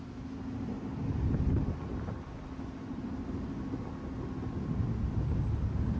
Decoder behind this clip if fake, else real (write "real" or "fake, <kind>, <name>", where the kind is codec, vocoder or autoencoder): real